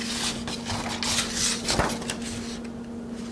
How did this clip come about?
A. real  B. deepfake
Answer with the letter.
A